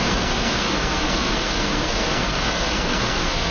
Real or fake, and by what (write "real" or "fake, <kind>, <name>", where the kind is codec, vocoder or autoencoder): fake, codec, SNAC